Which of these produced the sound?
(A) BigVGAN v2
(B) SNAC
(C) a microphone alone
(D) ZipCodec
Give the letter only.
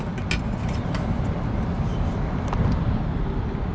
C